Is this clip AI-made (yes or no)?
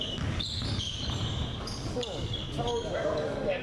yes